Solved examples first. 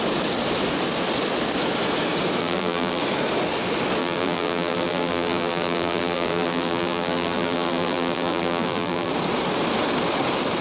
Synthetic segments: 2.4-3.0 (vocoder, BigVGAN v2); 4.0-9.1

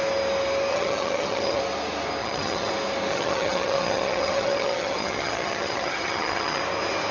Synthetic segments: 0.7-1.6 (vocoder, HiFi-GAN); 2.2-2.7; 3.1-6.6

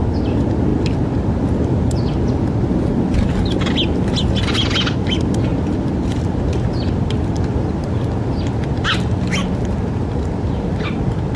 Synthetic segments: 5.5-6.4 (vocoder, BigVGAN v2)

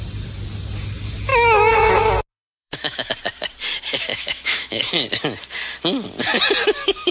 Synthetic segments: 1.3-1.9 (autoencoder, DAC-VAE); 2.3-3.1; 4.1-4.8

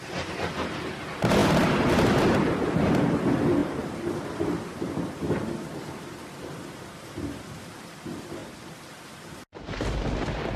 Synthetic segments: 1.4-2.2 (vocoder, BigVGAN v2); 3.6-6.6; 8.4-8.9